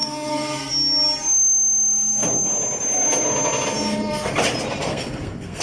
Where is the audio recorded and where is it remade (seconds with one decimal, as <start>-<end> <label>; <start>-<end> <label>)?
0.0-0.7 remade; 0.7-4.9 recorded; 4.9-5.6 remade